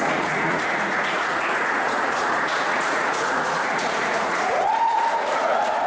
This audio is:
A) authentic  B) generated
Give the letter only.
B